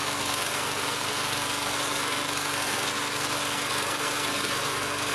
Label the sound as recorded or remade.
remade